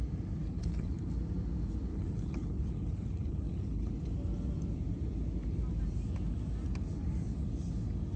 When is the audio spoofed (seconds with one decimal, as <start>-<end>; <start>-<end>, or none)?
0.4-1.1; 1.9-3.9